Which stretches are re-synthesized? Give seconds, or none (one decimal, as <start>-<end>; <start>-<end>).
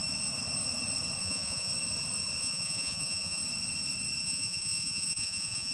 1.2-1.7; 2.4-3.4; 4.2-5.7